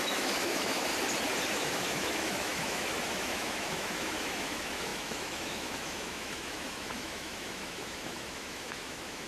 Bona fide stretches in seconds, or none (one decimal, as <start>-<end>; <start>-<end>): 0.9-1.5